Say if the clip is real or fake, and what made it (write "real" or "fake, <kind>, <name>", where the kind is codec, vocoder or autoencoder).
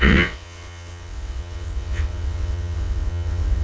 fake, vocoder, WaveNeXt